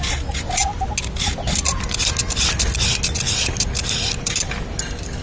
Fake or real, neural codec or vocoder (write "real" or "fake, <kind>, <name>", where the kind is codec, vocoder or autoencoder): real